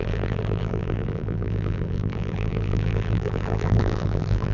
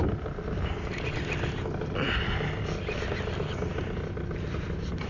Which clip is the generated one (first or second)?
first